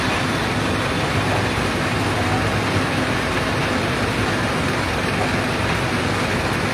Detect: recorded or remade recorded